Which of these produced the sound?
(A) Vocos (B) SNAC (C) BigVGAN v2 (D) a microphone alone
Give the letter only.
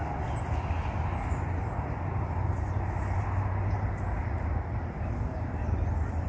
D